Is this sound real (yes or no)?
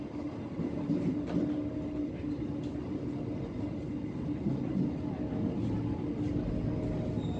yes